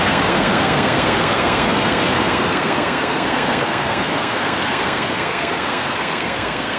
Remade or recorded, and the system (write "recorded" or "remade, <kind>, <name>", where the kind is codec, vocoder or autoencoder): remade, codec, SNAC